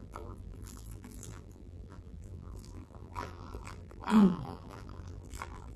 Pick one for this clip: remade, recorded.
remade